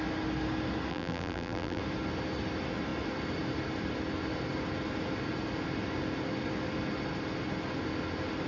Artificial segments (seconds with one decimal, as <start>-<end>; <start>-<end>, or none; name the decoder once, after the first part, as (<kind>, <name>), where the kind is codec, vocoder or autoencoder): 0.9-1.8 (vocoder, BigVGAN v2)